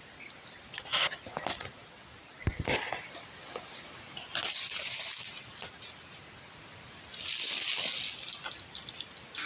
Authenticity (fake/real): real